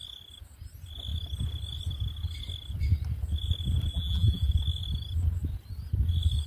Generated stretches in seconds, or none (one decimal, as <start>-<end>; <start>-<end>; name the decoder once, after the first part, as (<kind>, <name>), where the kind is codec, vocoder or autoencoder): 3.9-4.5 (vocoder, BigVGAN v2)